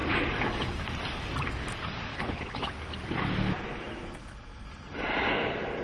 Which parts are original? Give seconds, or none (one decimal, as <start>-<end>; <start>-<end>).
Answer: 0.0-2.1; 2.7-5.8